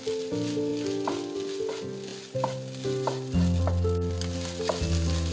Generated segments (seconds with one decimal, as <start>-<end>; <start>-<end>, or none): none